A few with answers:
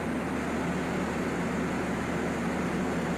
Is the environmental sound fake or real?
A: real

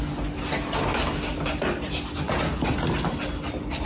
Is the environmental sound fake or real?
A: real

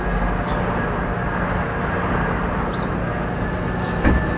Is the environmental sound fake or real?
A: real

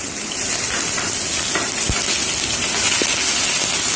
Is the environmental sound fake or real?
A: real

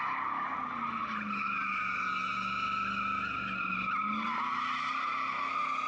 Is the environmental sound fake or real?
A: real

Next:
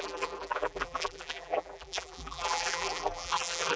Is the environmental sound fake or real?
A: fake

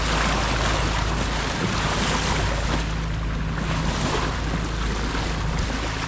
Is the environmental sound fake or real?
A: real